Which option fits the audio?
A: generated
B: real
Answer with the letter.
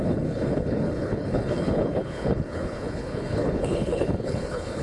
A